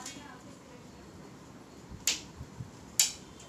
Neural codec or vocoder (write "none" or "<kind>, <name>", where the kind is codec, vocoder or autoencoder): none